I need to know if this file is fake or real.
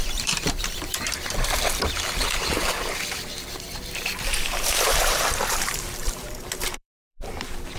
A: fake